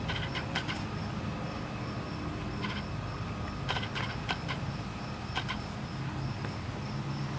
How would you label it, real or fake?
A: real